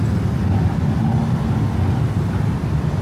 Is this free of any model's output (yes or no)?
yes